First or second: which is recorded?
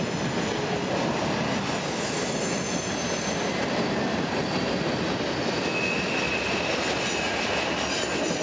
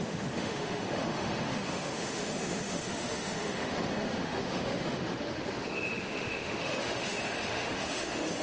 first